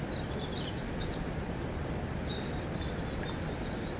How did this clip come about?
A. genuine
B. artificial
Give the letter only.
A